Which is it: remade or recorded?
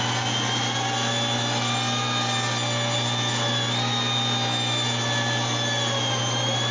recorded